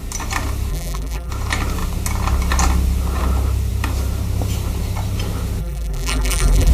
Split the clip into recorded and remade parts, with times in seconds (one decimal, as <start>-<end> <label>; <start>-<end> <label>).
0.0-0.7 recorded; 0.7-1.3 remade; 1.3-5.6 recorded; 5.6-6.7 remade